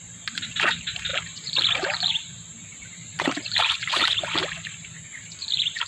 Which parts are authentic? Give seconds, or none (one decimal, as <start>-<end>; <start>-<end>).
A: none